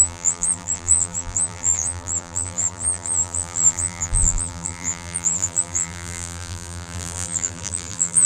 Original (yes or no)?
no